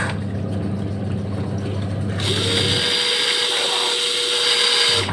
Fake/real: real